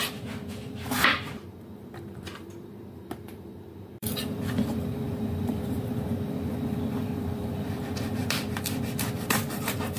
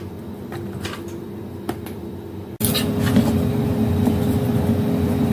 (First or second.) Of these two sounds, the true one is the second